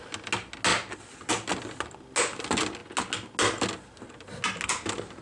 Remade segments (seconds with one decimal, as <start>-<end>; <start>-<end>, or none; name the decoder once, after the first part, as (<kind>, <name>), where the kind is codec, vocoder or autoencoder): none